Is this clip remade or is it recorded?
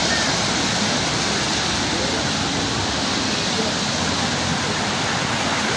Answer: recorded